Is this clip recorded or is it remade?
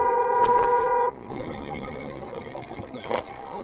remade